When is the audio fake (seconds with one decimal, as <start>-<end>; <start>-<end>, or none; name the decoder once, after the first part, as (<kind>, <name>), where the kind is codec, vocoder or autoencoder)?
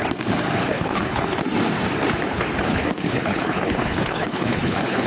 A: 0.6-1.4 (codec, HILCodec); 2.7-5.1